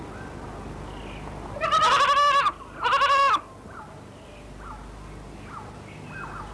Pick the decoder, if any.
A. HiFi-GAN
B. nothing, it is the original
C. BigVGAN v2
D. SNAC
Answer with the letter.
B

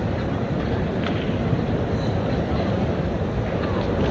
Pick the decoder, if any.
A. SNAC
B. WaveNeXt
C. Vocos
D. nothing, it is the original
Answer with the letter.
D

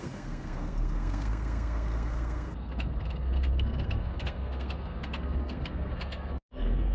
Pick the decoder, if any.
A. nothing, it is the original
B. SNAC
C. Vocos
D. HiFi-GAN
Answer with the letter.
B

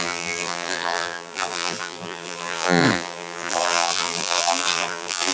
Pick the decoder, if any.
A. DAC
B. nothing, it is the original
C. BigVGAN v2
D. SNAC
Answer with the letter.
C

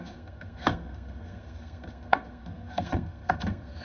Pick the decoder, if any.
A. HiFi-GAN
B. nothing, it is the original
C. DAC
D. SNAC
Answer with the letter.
D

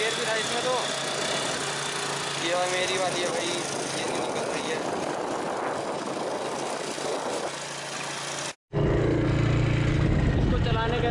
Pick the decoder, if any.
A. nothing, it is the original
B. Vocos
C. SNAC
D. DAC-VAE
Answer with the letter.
A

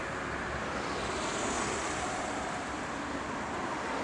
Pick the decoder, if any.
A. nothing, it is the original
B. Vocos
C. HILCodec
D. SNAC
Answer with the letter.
A